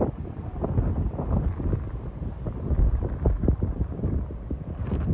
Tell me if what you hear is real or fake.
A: real